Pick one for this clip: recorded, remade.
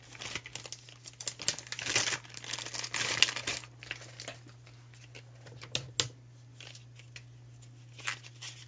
recorded